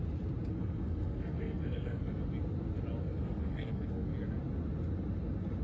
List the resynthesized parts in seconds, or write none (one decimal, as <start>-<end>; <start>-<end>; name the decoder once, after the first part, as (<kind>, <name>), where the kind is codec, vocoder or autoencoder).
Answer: 0.5-2.1 (codec, SNAC); 3.0-4.1